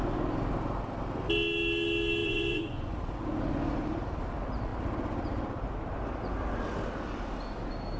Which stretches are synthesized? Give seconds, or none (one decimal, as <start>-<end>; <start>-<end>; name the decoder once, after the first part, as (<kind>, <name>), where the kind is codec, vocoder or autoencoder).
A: 2.2-2.9 (vocoder, Vocos)